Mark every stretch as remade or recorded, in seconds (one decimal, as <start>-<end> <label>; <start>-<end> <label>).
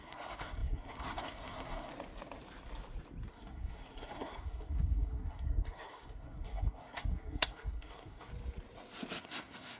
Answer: 0.0-1.9 remade; 1.9-3.3 recorded; 3.3-8.3 remade; 8.3-9.2 recorded; 9.2-9.8 remade